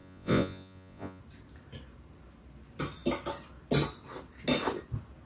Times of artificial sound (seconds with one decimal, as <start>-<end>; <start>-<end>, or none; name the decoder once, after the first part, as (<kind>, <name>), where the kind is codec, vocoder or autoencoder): 0.0-1.2 (vocoder, Vocos)